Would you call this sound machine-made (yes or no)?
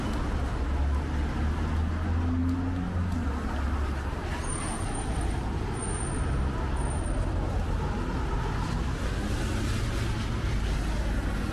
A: no